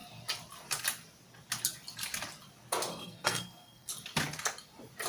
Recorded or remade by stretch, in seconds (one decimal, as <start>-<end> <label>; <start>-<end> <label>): 0.0-2.9 recorded; 2.9-3.9 remade; 3.9-5.1 recorded